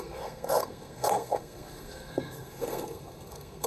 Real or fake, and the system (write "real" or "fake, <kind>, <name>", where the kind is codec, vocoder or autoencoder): fake, codec, SNAC